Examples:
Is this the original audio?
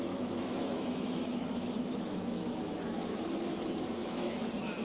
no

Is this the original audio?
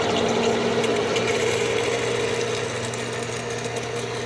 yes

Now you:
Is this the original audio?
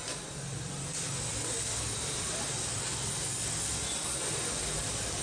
yes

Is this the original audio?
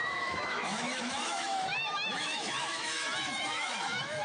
no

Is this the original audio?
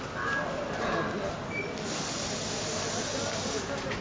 yes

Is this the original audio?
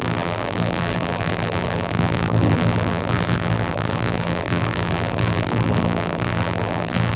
no